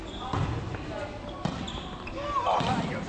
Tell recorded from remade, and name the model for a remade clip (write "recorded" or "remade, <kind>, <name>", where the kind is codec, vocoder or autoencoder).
recorded